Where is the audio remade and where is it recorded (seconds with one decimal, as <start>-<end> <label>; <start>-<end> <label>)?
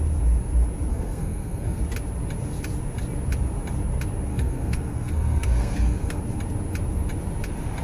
0.0-0.9 recorded; 0.9-1.8 remade; 1.8-4.3 recorded; 4.3-6.2 remade; 6.2-7.8 recorded